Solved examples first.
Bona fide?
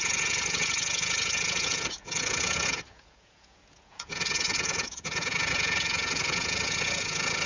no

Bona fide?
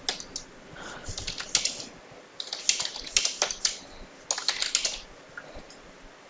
yes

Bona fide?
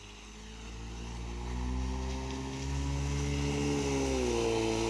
yes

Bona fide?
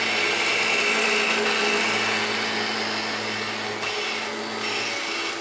yes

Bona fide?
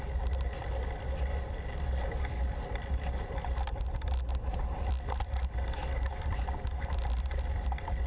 yes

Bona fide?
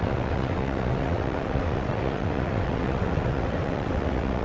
no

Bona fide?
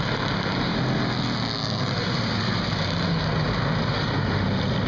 yes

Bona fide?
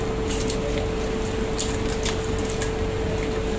yes